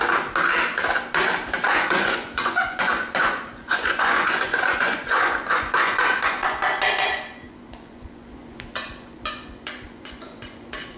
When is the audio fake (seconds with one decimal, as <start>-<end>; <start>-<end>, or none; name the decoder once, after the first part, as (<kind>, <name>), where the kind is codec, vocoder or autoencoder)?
1.7-11.0 (vocoder, Vocos)